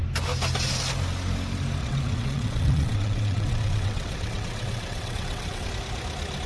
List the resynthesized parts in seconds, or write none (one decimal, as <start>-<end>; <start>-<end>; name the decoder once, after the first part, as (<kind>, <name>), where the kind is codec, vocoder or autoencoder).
1.8-5.7 (vocoder, WaveNeXt)